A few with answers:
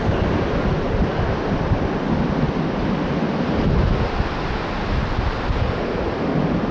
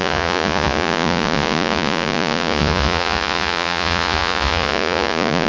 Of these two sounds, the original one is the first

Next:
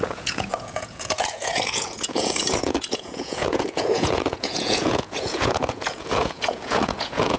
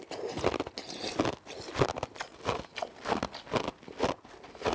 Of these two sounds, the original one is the second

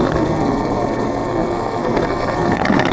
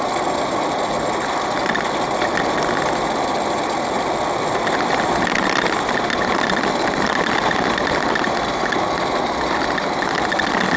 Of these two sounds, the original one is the second